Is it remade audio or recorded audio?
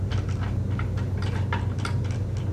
recorded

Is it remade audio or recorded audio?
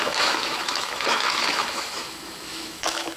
remade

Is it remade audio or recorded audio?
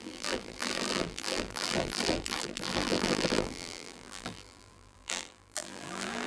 remade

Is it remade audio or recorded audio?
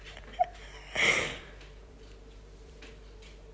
remade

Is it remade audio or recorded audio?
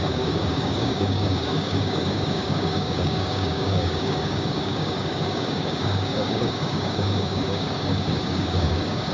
remade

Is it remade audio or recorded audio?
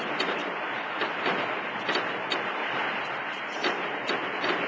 recorded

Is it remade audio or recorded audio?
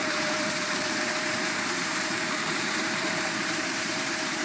remade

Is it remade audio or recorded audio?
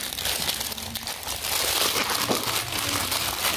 recorded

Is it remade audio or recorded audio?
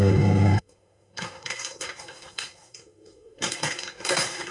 remade